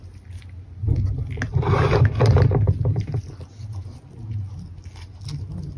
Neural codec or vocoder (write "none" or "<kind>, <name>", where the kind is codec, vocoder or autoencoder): none